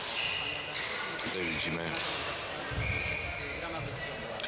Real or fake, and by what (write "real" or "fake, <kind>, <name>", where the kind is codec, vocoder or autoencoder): real